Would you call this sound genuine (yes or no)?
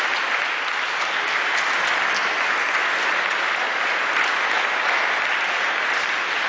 yes